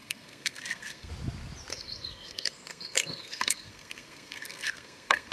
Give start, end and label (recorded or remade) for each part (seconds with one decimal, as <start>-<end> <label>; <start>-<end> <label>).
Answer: 0.0-1.1 remade; 1.1-1.7 recorded; 1.7-5.3 remade